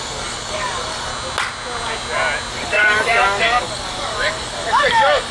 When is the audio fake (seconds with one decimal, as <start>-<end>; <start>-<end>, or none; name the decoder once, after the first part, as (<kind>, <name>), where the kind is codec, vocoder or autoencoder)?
0.0-1.1 (codec, DAC); 2.5-5.3